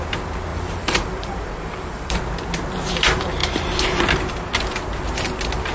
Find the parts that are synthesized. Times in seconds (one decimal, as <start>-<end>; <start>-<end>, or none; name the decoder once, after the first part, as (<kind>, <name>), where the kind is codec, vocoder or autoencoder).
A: 0.5-2.2 (vocoder, BigVGAN v2)